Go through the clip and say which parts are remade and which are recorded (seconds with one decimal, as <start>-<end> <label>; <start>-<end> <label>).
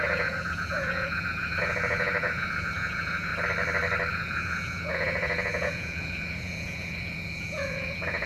0.0-3.3 remade; 3.3-4.1 recorded; 4.1-8.3 remade